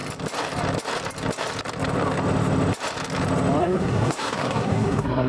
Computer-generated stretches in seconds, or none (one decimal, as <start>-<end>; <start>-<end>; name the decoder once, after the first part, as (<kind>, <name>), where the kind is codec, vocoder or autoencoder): 3.6-5.3 (codec, SNAC)